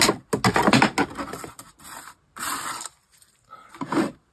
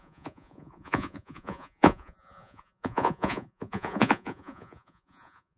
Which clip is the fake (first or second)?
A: second